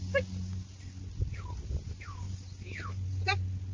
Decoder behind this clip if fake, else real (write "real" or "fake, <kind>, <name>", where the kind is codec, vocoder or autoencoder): real